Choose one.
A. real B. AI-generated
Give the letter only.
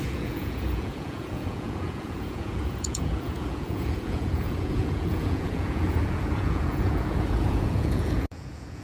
B